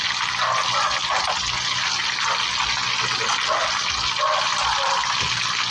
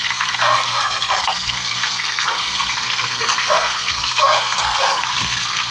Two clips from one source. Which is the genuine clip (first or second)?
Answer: first